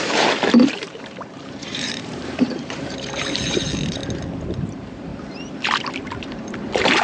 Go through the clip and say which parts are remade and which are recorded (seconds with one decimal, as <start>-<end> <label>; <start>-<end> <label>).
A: 0.0-4.0 remade; 4.0-4.6 recorded; 4.6-5.1 remade; 5.1-5.9 recorded; 5.9-7.0 remade